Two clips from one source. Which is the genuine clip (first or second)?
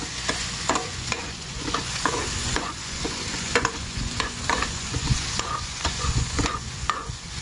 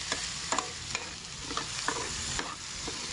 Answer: second